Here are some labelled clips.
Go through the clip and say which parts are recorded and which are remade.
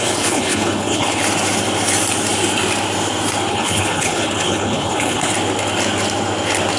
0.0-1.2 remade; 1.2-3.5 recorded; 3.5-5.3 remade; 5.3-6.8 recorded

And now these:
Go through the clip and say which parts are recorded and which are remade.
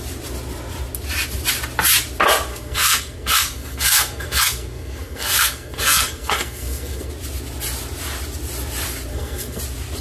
0.0-2.5 recorded; 2.5-7.1 remade; 7.1-9.1 recorded; 9.1-9.6 remade; 9.6-10.0 recorded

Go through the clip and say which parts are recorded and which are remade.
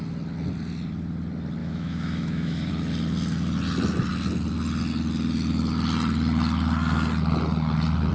0.0-1.6 recorded; 1.6-2.7 remade; 2.7-8.1 recorded